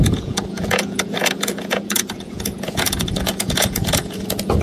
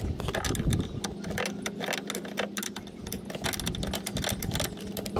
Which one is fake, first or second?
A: first